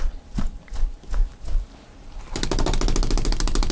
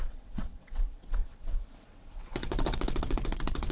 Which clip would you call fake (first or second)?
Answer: second